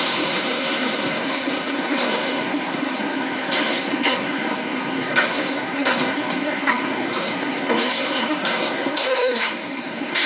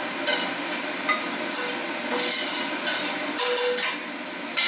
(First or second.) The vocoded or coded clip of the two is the first